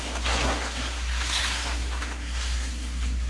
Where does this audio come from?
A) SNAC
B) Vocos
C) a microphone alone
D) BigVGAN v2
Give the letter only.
A